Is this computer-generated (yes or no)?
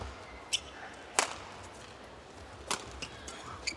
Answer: no